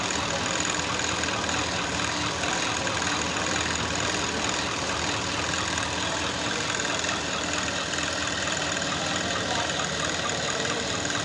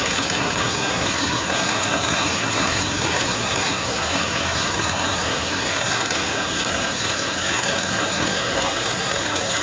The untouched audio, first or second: first